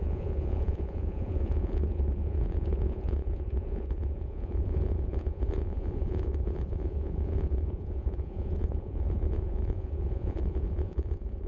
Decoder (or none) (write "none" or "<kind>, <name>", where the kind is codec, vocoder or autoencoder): vocoder, Vocos